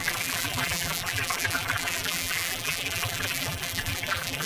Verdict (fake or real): fake